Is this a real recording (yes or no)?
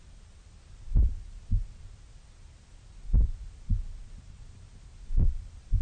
yes